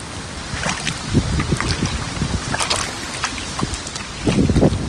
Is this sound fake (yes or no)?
no